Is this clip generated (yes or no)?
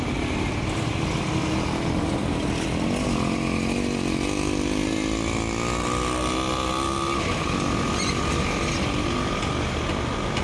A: no